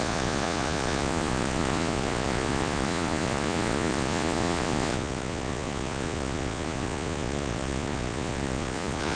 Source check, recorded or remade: remade